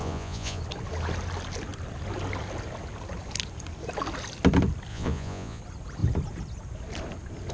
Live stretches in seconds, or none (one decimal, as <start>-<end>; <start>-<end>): 0.6-4.9; 5.6-7.5

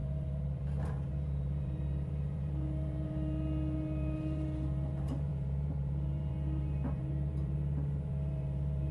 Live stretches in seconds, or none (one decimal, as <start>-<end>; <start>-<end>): none

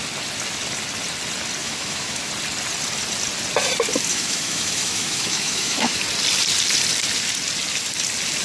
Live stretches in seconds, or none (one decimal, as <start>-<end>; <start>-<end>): 0.0-1.6; 2.3-4.1; 6.0-8.4

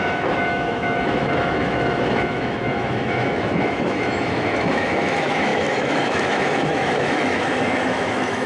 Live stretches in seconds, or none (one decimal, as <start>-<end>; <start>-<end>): none

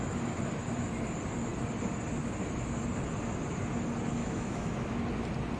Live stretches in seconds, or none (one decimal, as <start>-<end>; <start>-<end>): 0.0-4.2; 5.0-5.6

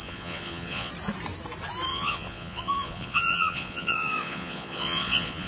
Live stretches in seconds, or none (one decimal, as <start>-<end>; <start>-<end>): 0.9-1.9